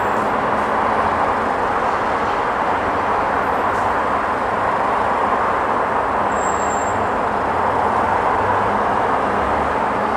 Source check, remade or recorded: recorded